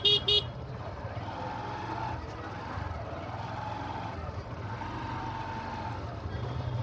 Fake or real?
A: real